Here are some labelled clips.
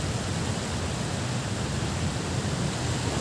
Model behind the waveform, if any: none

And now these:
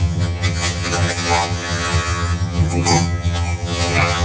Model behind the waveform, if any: vocoder, HiFi-GAN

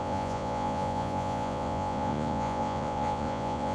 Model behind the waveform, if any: vocoder, Vocos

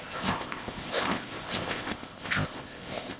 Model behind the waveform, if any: codec, ZipCodec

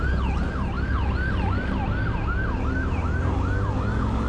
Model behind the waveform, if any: none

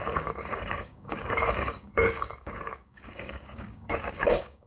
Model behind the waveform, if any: codec, DAC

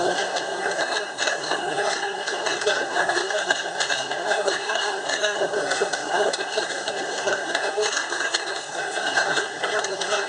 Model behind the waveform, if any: codec, SNAC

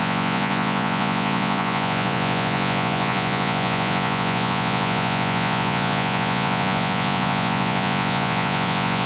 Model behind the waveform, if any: vocoder, Vocos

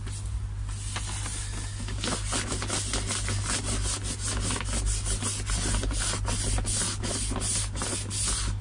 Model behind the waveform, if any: none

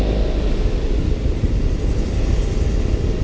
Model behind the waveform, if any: none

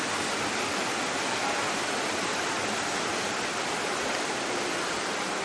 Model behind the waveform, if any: none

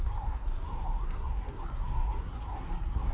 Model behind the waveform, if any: codec, SNAC